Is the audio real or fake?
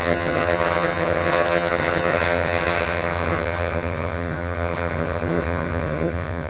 fake